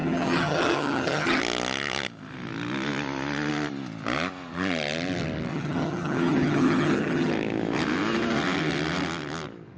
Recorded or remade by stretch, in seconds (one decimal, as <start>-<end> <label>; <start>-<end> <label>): 0.0-1.4 remade; 1.4-5.5 recorded; 5.5-7.3 remade; 7.3-9.8 recorded